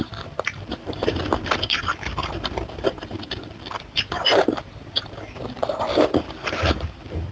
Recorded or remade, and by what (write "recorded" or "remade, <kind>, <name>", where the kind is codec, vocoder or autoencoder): remade, vocoder, BigVGAN v2